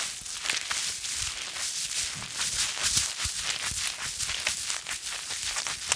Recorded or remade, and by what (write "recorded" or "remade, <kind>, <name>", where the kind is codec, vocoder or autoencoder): recorded